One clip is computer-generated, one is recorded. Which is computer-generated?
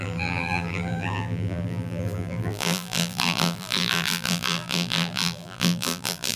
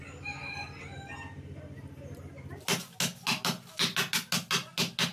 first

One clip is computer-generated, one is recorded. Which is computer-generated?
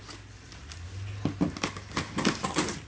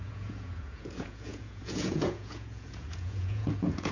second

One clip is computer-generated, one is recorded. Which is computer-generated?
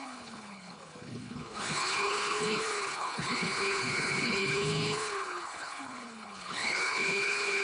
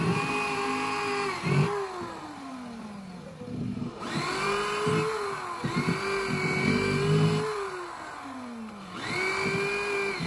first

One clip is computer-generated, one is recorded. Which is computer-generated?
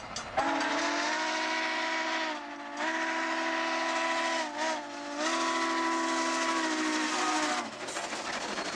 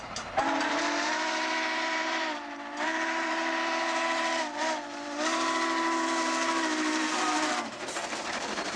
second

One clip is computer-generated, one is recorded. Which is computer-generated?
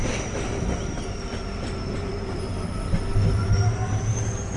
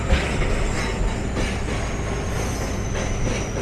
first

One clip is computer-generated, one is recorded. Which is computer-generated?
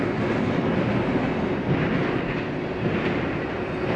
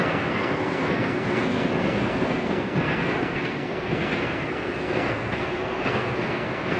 second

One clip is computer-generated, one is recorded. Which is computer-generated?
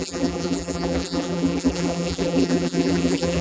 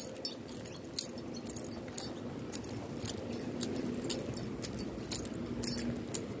first